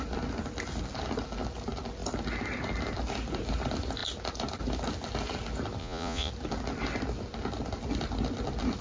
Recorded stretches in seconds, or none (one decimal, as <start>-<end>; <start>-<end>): 0.0-5.8; 6.3-8.8